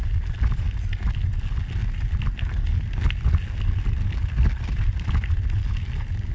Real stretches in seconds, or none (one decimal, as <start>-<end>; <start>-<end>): 0.0-6.3